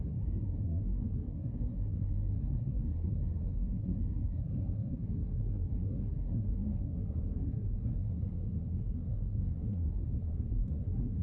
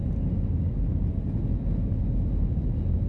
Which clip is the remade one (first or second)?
first